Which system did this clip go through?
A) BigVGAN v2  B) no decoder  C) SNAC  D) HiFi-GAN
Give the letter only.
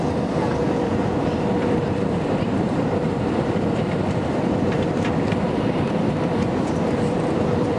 A